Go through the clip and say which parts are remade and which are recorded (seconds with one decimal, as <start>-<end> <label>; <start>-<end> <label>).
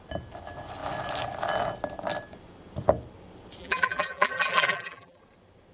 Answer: 0.0-3.6 recorded; 3.6-5.2 remade; 5.2-5.7 recorded